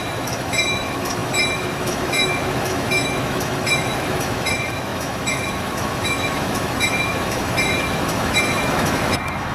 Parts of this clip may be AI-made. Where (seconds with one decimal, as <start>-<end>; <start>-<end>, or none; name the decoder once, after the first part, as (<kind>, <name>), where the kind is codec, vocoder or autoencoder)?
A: 0.0-9.5 (autoencoder, DAC-VAE)